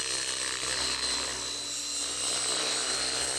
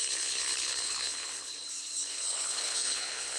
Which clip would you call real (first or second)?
first